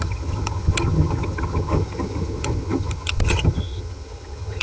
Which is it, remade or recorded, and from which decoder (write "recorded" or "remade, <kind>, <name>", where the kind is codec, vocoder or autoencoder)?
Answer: remade, vocoder, HiFi-GAN